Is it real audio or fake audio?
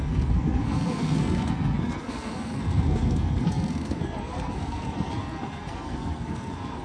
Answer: fake